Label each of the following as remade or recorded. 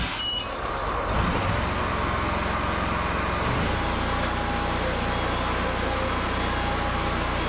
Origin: recorded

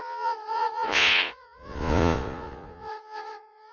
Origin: remade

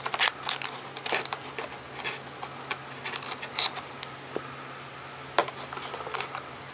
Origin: recorded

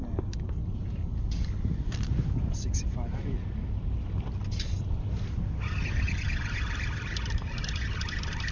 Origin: recorded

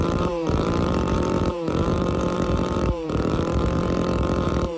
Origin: remade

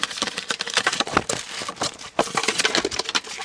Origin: remade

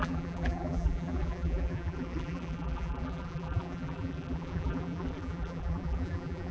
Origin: remade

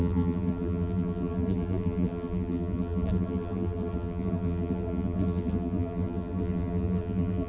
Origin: remade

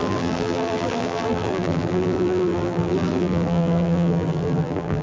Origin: remade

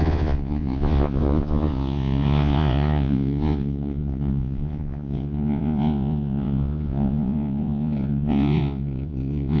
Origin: remade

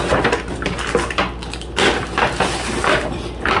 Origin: recorded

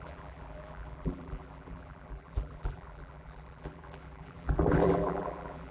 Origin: remade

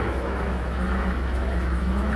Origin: remade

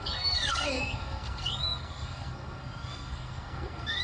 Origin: remade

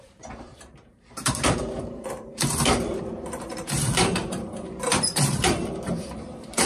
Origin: remade